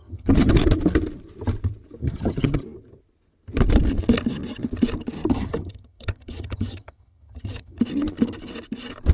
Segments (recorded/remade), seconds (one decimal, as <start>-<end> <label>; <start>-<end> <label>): 0.0-0.5 remade; 0.5-2.0 recorded; 2.0-2.6 remade; 2.6-5.3 recorded; 5.3-7.8 remade; 7.8-9.1 recorded

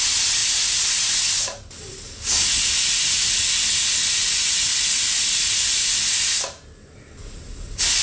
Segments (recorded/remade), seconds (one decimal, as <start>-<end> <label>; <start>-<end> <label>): 0.0-8.0 recorded

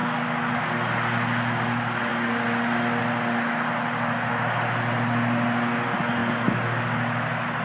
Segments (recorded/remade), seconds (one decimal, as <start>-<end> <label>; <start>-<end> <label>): 0.0-7.6 recorded

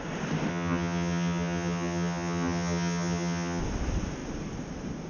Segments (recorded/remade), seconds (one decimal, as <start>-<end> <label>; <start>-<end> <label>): 0.0-0.5 recorded; 0.5-3.6 remade; 3.6-5.1 recorded